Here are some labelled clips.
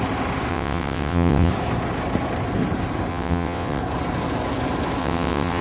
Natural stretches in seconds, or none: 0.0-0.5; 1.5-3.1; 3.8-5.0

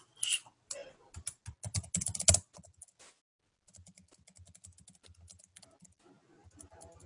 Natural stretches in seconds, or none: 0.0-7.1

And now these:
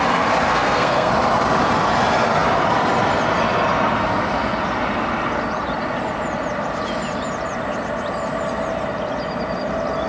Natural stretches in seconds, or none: 0.0-0.5; 1.1-10.1